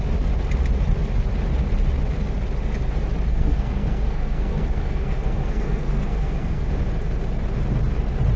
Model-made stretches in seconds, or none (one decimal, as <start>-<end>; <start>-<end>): 3.3-6.7